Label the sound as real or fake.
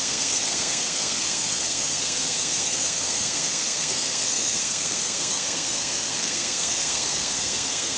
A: fake